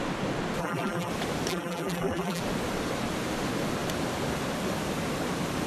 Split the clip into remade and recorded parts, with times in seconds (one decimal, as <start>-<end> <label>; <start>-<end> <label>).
0.0-0.6 recorded; 0.6-1.1 remade; 1.1-1.5 recorded; 1.5-2.4 remade; 2.4-5.7 recorded